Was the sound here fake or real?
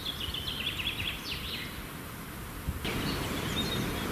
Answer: real